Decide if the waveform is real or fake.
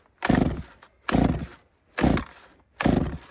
real